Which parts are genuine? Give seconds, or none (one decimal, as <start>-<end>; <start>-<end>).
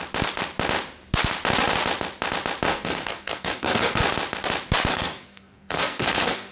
0.0-2.7; 4.0-4.9